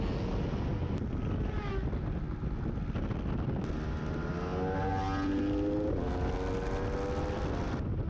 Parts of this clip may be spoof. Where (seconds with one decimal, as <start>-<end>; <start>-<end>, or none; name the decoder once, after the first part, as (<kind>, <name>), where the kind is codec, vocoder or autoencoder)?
none